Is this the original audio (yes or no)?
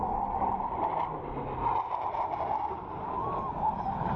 yes